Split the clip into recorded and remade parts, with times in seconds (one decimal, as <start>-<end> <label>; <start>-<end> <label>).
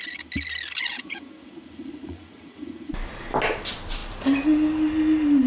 0.0-0.9 recorded; 0.9-2.9 remade; 2.9-5.5 recorded